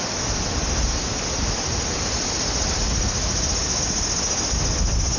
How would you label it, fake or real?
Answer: real